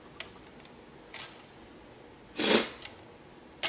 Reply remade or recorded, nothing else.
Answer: recorded